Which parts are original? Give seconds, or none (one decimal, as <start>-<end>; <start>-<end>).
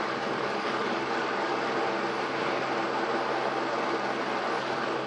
1.5-4.6